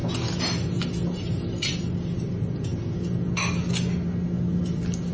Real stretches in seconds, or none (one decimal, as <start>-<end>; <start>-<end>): 0.0-5.1